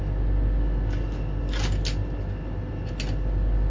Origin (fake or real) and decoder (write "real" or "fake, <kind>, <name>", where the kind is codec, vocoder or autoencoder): real